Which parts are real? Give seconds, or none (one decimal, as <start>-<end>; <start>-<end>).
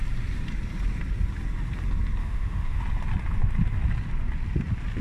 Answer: 0.0-2.2; 2.8-5.0